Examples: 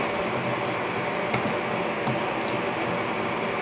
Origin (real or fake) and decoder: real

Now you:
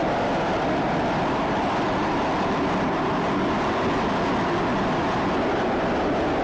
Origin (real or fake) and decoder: real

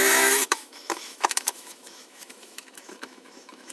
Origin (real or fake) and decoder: fake, autoencoder, DAC-VAE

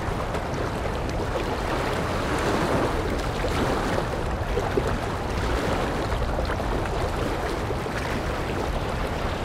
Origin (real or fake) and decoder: real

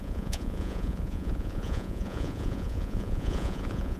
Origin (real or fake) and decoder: fake, vocoder, Vocos